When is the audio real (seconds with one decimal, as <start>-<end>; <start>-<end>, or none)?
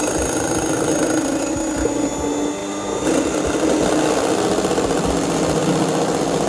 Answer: 0.0-6.5